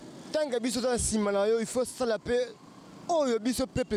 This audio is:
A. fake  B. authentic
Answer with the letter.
B